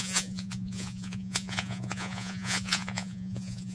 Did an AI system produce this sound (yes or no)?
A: yes